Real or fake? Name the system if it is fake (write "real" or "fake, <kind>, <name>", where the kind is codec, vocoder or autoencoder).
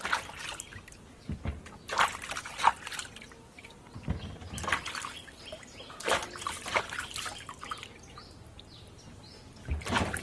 real